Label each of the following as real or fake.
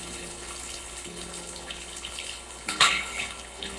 fake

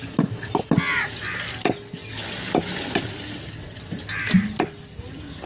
real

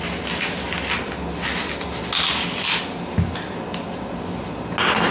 real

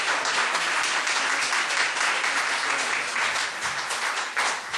real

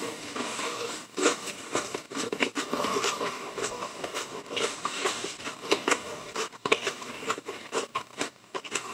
fake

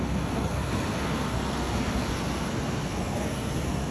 fake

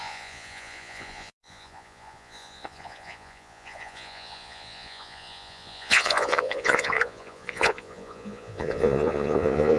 fake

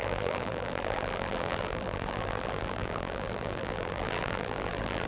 fake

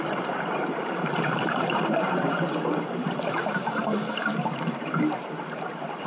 fake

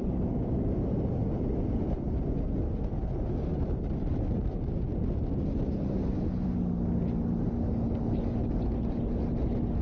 real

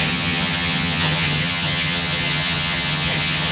fake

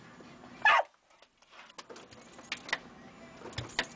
real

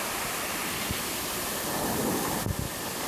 real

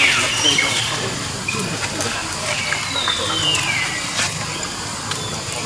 real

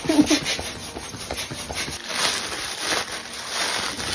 real